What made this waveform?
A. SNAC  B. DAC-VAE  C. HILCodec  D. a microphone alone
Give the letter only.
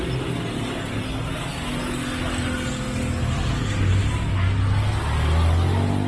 D